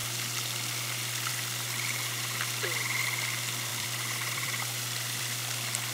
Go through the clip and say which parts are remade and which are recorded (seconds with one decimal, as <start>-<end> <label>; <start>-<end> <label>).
0.0-3.7 recorded; 3.7-5.2 remade; 5.2-5.9 recorded